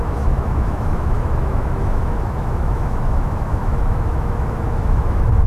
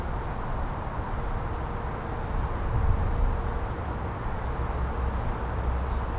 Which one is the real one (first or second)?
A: second